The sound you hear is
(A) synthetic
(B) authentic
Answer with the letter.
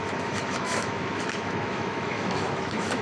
A